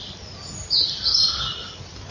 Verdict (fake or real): real